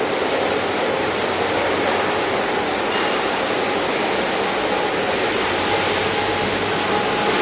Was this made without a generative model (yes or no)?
yes